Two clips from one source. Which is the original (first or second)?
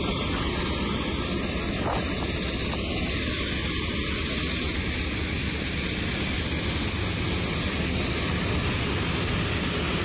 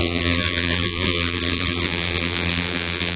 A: first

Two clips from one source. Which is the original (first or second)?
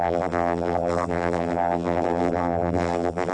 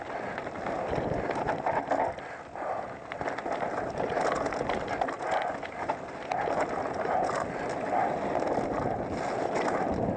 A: second